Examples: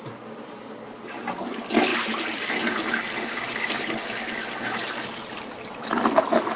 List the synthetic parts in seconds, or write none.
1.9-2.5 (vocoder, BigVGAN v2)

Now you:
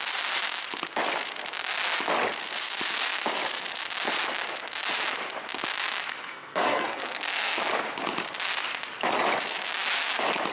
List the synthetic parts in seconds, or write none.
6.1-7.6 (codec, SNAC)

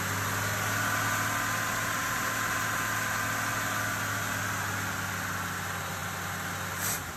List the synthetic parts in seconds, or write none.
none

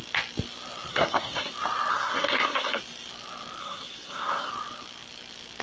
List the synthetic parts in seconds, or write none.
0.9-1.5 (codec, SNAC); 1.9-2.8; 3.6-4.5

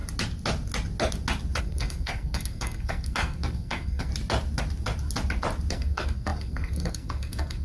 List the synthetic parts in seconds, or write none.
1.6-4.1 (codec, SNAC); 5.7-7.6

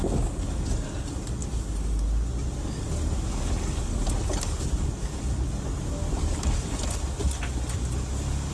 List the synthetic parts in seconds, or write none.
none

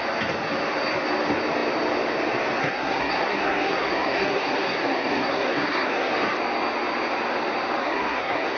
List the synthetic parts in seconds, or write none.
2.6-6.1 (codec, SNAC); 7.8-8.6

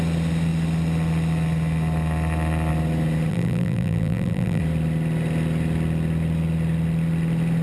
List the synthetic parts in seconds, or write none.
3.3-4.6 (vocoder, BigVGAN v2)